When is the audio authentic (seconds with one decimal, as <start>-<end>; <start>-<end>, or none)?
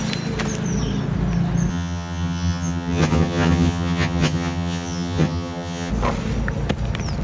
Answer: 0.0-1.7; 5.9-7.2